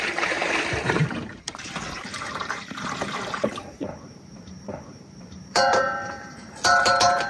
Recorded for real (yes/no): no